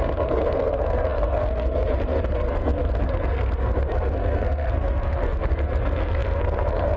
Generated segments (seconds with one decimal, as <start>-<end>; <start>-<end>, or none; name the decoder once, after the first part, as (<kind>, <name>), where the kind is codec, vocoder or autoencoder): 0.0-7.0 (codec, SNAC)